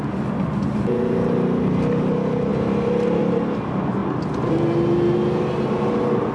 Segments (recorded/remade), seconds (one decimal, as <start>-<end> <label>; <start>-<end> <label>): 0.0-6.3 recorded